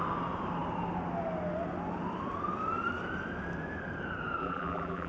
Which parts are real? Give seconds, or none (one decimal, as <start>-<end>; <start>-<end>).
0.0-4.4